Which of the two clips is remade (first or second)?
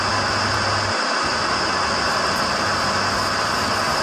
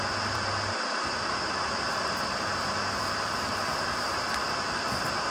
second